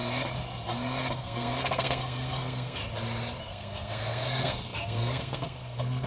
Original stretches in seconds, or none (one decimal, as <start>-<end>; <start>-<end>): 0.0-1.2; 2.8-3.4